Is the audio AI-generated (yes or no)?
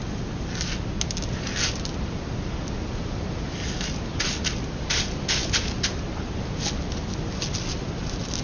no